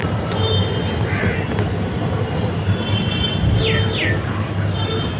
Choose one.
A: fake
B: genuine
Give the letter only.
B